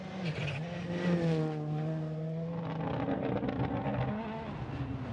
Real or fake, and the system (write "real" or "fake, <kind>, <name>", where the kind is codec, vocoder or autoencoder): real